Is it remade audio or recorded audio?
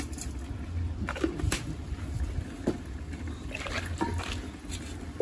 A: recorded